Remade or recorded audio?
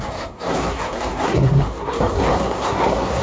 remade